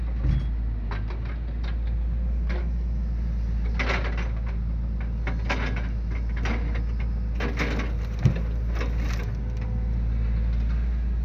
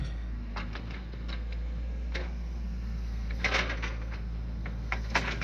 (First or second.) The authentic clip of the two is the first